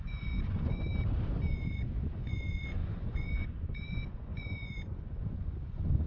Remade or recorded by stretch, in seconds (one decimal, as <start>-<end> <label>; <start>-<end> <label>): 0.0-0.9 remade; 0.9-1.5 recorded; 1.5-6.1 remade